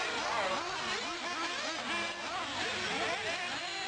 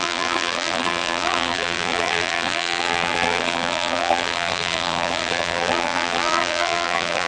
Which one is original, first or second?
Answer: first